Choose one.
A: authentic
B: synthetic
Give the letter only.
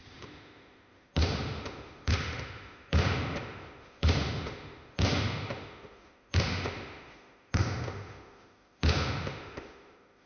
B